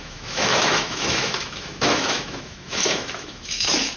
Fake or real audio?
fake